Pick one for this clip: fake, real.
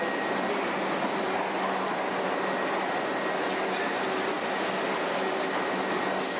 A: real